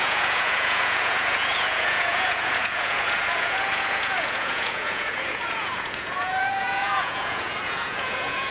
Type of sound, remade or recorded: remade